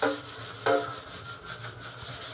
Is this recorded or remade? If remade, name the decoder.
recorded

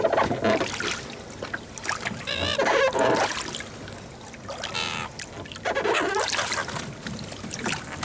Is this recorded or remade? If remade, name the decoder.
recorded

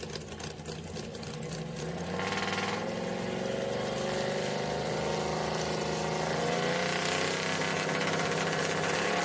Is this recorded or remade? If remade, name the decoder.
recorded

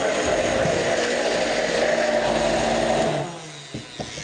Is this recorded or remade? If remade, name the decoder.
recorded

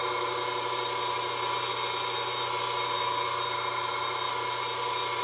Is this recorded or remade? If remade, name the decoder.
recorded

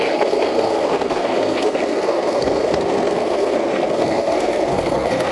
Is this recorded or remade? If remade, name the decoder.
remade, codec, SNAC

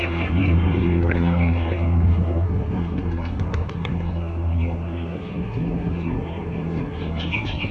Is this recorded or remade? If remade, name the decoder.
remade, codec, SNAC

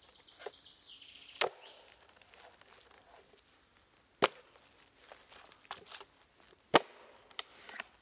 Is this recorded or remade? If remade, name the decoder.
recorded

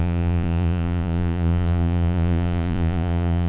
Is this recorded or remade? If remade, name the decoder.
remade, vocoder, Vocos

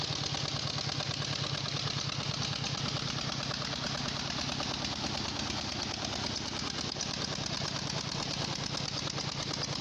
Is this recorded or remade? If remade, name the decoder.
recorded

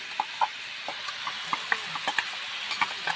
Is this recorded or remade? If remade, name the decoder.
recorded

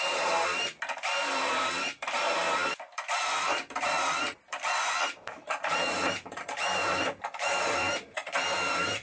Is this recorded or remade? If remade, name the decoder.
remade, vocoder, BigVGAN v2